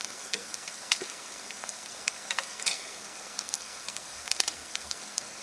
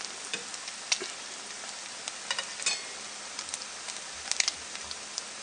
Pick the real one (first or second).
second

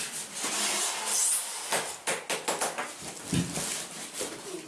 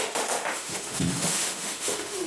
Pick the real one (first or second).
first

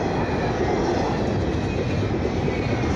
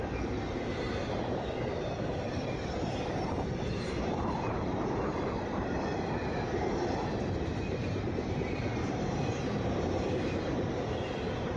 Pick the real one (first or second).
first